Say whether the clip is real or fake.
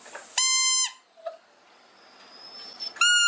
real